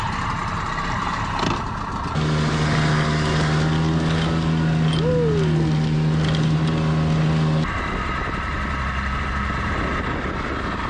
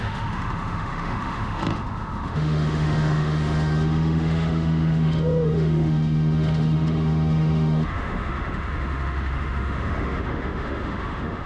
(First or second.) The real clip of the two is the first